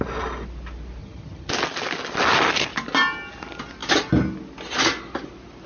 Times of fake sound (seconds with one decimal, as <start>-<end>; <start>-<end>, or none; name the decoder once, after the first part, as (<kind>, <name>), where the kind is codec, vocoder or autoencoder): 1.0-1.5 (vocoder, HiFi-GAN)